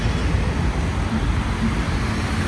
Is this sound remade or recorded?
recorded